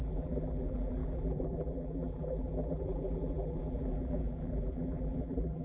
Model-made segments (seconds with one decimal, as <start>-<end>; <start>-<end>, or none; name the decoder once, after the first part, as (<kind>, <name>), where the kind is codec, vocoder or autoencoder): 0.0-5.6 (vocoder, BigVGAN v2)

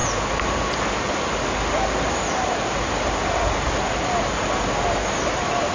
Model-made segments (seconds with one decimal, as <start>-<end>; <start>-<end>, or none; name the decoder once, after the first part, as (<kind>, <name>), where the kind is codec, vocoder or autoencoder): 0.0-3.4 (vocoder, BigVGAN v2)

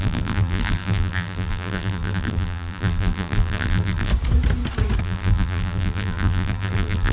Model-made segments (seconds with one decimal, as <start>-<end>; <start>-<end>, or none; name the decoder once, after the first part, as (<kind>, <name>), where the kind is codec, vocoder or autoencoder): 0.0-4.1 (vocoder, BigVGAN v2); 5.0-7.1